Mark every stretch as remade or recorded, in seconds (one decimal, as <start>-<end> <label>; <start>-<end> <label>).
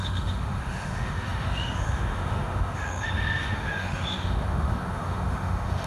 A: 0.0-5.9 remade